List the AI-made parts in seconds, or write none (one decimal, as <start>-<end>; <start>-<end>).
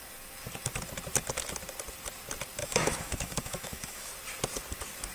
2.6-4.1